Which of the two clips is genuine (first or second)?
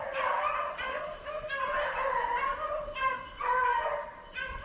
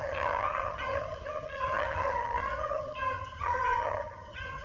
first